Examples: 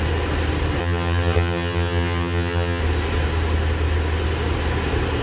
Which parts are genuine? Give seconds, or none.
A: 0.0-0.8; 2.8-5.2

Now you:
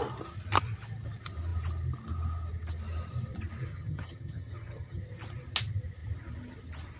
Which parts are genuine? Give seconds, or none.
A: 0.0-3.7; 5.0-7.0

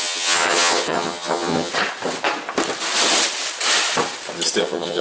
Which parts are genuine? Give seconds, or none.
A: 1.7-4.6

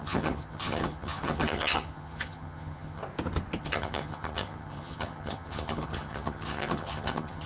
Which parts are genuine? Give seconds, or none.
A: 3.0-3.6

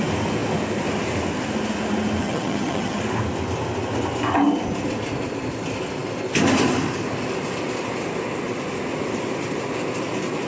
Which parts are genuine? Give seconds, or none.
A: 0.0-2.2; 3.0-10.5

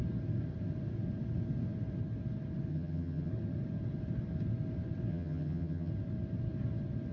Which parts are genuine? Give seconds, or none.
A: 0.0-2.7; 3.3-5.1; 5.9-7.1

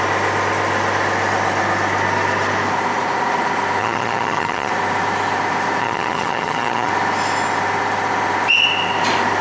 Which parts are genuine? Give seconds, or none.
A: 0.0-3.8; 4.7-5.8; 6.9-9.4

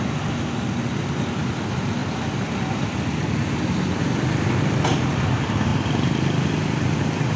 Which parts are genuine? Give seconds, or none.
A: 0.0-7.4